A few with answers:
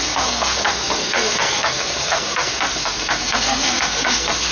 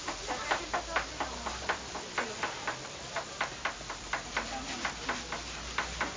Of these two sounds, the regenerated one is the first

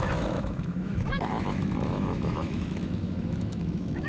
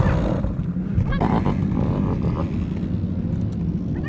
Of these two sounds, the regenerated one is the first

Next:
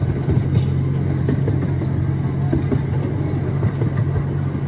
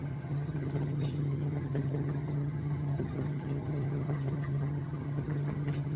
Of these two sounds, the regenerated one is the second